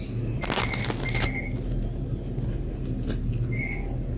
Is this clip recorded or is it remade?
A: recorded